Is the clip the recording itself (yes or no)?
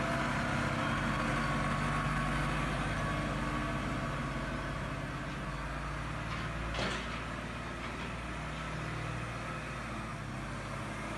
yes